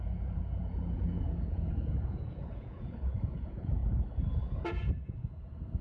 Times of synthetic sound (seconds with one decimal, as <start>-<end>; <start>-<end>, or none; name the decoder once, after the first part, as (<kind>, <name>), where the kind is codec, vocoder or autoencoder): 0.0-3.8 (vocoder, Vocos); 4.3-5.8